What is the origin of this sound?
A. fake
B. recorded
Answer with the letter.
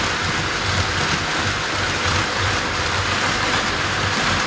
B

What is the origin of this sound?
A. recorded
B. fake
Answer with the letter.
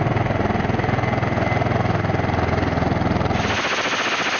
A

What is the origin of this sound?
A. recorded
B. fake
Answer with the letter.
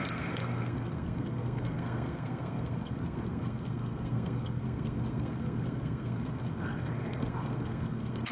B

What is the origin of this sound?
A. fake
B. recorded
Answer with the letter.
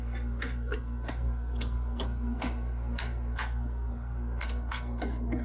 A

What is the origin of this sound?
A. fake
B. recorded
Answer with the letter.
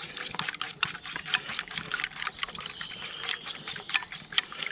B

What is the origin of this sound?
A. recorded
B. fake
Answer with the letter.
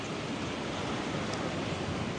A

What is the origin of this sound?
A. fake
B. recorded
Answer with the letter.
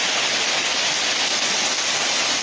B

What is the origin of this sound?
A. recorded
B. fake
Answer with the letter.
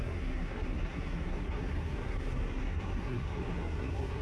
B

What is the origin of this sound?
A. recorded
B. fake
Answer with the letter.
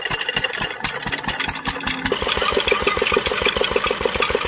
A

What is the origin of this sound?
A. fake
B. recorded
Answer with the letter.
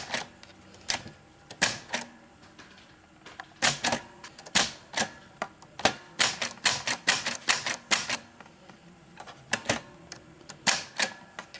A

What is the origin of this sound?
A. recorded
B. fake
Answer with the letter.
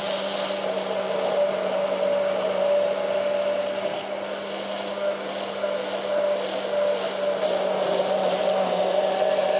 A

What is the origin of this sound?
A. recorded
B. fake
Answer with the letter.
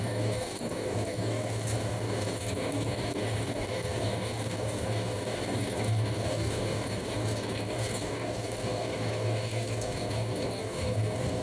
B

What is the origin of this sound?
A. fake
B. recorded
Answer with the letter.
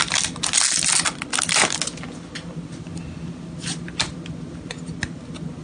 B